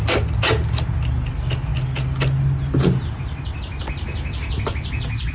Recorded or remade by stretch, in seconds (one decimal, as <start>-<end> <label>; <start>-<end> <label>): 0.0-5.3 recorded